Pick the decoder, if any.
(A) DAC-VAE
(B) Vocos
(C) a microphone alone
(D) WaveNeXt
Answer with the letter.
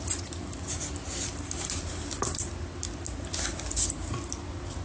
C